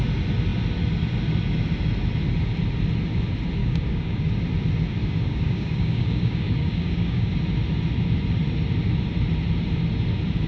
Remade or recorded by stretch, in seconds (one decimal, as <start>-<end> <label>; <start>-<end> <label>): 0.0-3.6 recorded; 3.6-4.3 remade; 4.3-5.0 recorded; 5.0-7.3 remade; 7.3-10.5 recorded